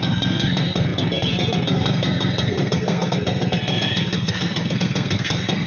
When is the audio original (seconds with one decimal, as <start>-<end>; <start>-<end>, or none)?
none